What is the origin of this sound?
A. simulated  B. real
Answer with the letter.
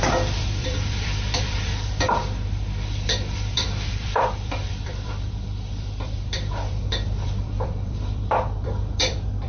A